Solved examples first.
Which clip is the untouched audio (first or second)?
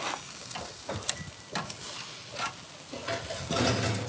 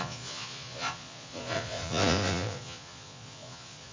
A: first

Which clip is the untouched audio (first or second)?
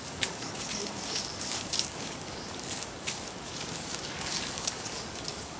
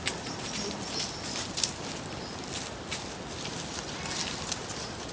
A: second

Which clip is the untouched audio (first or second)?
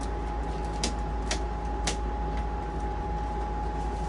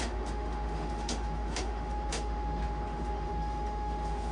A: first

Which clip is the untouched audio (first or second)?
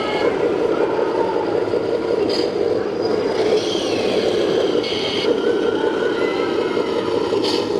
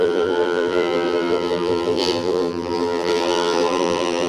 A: first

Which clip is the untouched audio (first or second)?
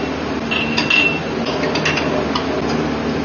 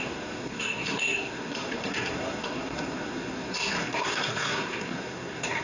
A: first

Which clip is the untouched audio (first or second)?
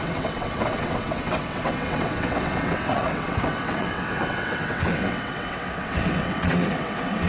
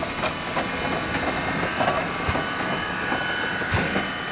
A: second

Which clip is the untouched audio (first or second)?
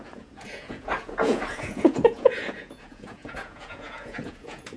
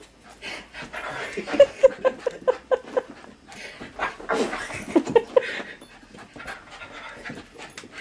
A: second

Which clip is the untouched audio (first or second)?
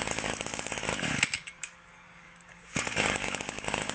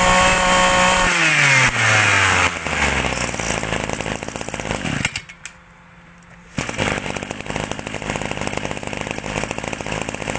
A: second